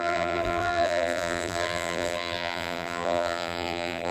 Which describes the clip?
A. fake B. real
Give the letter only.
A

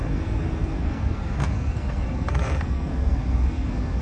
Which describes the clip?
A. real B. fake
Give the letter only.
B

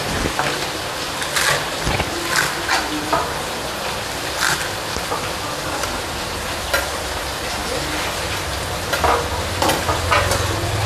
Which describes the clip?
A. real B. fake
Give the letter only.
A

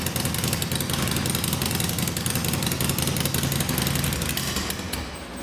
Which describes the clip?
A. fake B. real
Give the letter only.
B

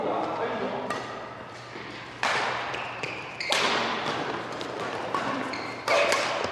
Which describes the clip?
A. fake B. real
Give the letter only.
B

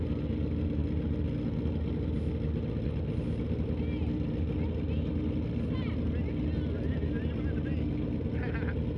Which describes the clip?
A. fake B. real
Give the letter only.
B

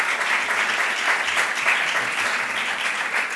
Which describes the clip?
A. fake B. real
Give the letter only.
B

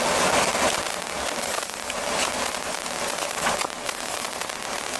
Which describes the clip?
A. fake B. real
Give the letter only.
B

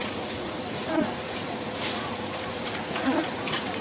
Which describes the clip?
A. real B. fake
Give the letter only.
B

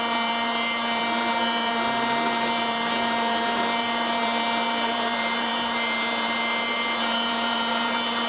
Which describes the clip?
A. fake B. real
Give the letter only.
A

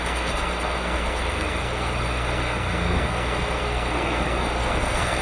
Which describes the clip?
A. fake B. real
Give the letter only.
A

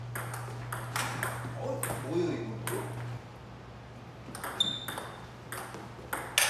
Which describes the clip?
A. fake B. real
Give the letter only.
B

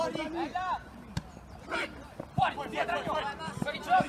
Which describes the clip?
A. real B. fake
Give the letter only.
B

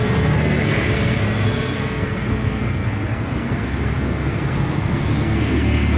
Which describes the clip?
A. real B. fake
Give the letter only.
B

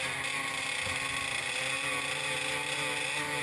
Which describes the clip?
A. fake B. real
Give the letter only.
B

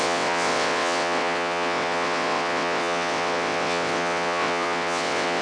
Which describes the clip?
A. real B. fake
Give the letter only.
B